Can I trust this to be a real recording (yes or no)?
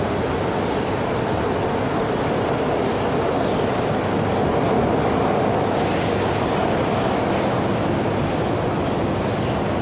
yes